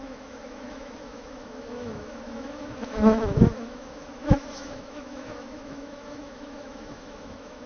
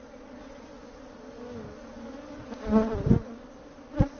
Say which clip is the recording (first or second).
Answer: second